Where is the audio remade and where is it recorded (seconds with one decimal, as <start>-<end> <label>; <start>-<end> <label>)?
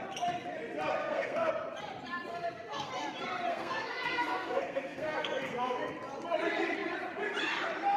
0.0-1.0 recorded; 1.0-1.5 remade; 1.5-2.3 recorded; 2.3-2.9 remade; 2.9-3.5 recorded; 3.5-5.9 remade; 5.9-8.0 recorded